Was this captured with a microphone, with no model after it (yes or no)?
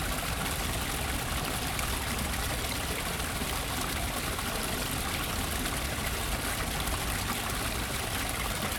yes